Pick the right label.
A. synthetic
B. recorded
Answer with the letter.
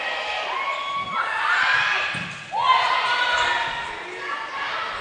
B